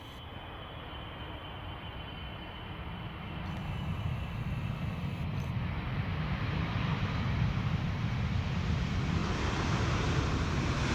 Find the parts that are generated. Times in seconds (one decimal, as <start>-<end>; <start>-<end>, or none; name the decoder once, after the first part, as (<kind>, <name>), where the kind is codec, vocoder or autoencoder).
none